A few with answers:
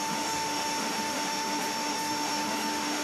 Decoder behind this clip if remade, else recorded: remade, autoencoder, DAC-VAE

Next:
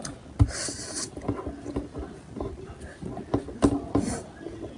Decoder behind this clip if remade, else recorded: recorded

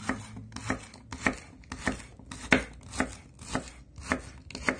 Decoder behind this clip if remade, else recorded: recorded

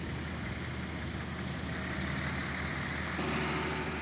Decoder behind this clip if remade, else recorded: recorded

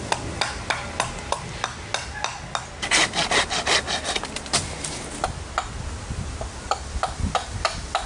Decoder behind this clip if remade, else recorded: recorded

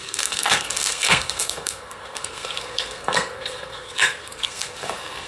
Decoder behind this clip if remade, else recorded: remade, codec, SNAC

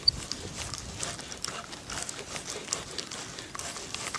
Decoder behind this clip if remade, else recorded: recorded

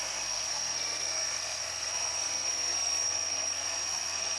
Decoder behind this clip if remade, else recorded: remade, codec, SNAC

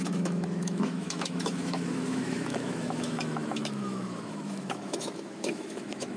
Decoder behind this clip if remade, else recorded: remade, autoencoder, DAC-VAE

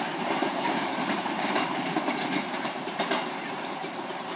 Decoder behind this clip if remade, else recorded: remade, vocoder, BigVGAN v2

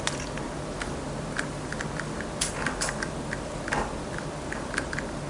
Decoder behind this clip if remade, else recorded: recorded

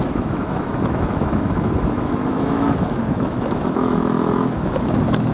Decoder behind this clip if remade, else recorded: remade, autoencoder, DAC-VAE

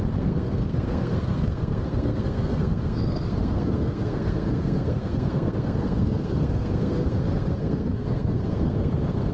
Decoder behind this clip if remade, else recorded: remade, codec, SNAC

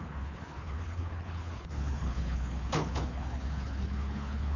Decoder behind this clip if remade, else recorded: remade, codec, HILCodec